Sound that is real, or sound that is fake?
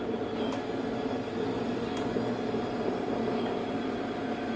real